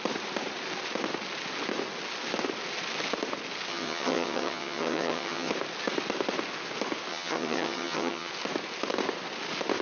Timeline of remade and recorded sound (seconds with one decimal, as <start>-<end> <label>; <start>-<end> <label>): 0.0-3.7 recorded; 3.7-5.5 remade; 5.5-7.1 recorded; 7.1-8.3 remade; 8.3-9.8 recorded